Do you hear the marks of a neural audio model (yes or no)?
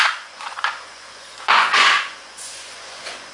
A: yes